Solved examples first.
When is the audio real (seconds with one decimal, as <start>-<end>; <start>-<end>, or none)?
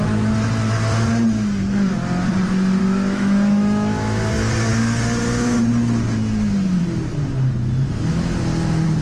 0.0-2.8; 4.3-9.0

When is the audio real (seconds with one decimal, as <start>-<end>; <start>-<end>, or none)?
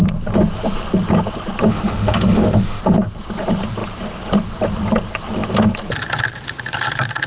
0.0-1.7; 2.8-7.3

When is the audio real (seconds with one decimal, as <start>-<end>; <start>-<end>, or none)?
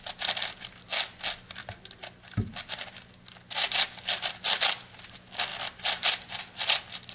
0.0-7.1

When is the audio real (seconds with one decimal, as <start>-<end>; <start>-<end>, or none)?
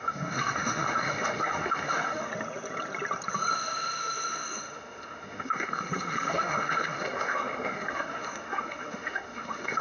2.3-3.5